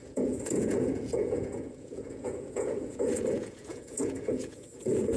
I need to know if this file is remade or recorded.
remade